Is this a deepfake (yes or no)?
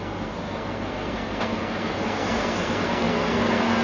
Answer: yes